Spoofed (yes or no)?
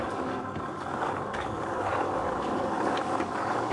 yes